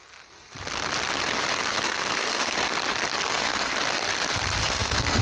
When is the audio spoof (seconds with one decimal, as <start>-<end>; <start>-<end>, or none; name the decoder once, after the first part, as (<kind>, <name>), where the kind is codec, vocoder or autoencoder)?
1.7-2.7 (codec, SNAC); 3.2-3.7; 4.6-5.2